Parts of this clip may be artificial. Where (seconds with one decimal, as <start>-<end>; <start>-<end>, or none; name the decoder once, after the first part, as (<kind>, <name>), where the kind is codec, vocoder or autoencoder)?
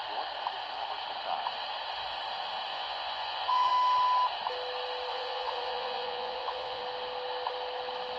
2.7-3.7 (vocoder, Vocos); 5.1-6.8